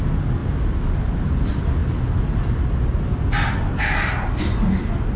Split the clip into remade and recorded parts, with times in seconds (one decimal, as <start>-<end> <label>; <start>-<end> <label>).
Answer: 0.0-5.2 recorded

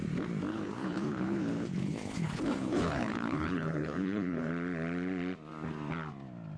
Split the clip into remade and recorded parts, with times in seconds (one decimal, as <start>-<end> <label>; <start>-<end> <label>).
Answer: 0.0-0.5 recorded; 0.5-4.5 remade; 4.5-6.6 recorded

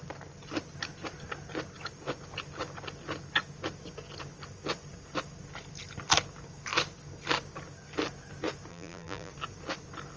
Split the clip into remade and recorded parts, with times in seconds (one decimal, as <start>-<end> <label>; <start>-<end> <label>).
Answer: 0.0-8.7 recorded; 8.7-9.3 remade; 9.3-10.2 recorded